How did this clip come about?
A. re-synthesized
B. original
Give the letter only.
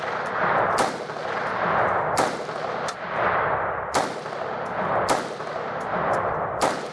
A